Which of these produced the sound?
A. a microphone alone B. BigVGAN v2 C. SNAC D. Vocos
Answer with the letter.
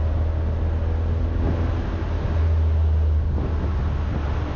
A